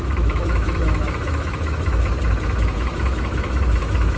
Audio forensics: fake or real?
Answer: fake